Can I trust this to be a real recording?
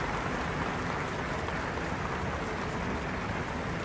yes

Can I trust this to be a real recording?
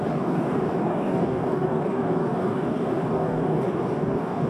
no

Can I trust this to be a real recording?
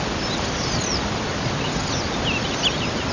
yes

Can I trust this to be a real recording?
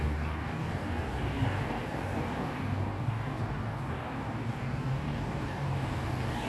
no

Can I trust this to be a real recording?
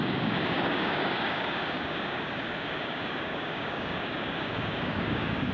no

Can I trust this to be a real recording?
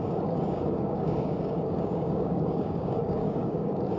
no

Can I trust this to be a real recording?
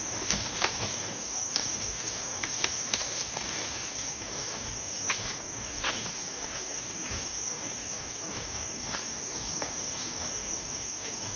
no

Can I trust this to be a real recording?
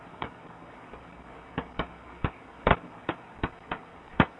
no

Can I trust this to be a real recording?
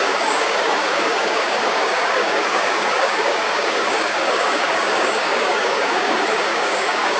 no